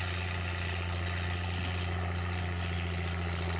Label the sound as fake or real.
real